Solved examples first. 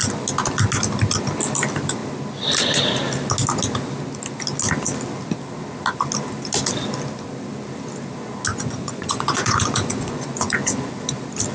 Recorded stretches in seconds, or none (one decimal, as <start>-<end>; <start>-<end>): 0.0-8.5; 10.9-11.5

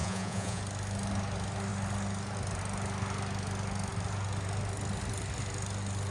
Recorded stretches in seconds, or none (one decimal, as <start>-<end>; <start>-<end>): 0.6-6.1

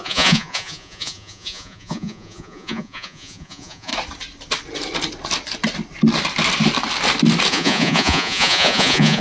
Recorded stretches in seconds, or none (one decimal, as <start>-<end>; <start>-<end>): 3.9-7.5